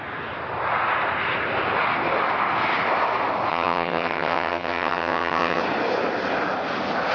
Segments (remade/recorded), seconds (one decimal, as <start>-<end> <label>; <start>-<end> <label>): 0.0-3.5 recorded; 3.5-5.6 remade; 5.6-7.1 recorded